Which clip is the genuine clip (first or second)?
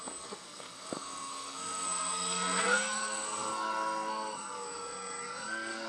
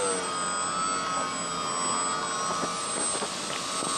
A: second